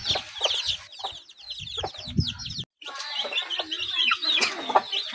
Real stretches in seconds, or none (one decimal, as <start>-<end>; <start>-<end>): 0.0-5.1